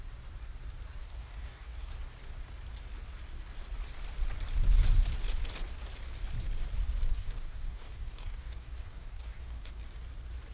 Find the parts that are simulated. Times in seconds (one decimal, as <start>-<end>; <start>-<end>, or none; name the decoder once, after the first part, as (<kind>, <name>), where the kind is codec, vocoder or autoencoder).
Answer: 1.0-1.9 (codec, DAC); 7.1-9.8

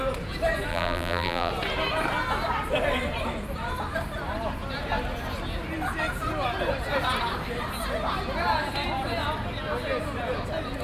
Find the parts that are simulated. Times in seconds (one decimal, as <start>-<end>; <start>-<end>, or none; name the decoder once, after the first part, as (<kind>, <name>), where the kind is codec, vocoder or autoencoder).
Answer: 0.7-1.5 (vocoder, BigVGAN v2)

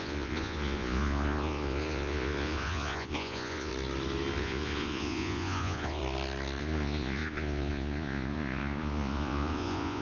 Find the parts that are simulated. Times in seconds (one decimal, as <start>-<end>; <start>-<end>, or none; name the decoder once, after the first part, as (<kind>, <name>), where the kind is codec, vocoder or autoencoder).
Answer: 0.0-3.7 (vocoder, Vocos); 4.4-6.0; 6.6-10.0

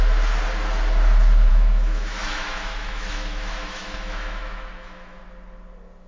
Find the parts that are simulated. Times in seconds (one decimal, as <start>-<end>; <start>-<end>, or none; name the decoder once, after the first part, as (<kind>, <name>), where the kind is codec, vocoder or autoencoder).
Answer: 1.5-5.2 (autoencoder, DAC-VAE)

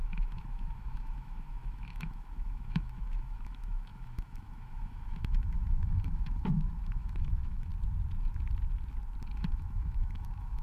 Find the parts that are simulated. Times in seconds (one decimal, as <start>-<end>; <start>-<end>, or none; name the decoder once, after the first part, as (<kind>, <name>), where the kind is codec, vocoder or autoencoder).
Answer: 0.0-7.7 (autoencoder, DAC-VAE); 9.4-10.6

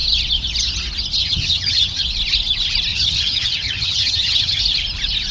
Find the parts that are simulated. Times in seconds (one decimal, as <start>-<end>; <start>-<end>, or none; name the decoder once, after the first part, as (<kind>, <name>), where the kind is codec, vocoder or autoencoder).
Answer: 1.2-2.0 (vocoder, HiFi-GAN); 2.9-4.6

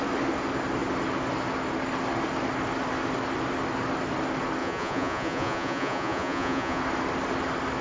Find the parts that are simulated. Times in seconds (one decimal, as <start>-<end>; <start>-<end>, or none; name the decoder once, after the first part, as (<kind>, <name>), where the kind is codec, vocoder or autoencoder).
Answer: 4.6-6.8 (vocoder, Vocos)